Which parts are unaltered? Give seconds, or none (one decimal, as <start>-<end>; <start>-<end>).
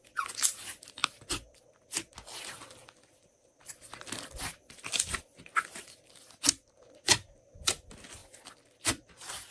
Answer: 0.0-9.5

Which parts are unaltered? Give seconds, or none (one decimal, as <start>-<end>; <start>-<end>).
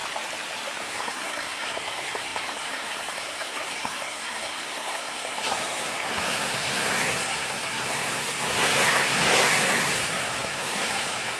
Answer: 0.0-0.8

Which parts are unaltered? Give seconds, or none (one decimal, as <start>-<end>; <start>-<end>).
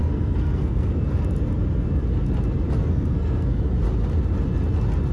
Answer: 1.0-2.8; 3.6-5.1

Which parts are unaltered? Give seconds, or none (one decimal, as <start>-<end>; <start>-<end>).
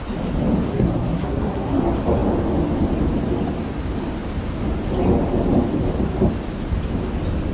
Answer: 0.0-0.7; 1.8-7.5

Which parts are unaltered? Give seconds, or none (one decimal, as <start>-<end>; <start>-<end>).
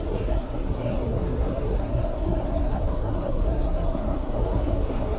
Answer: none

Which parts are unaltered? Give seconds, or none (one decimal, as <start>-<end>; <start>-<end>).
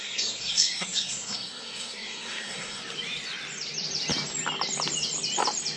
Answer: 2.8-5.8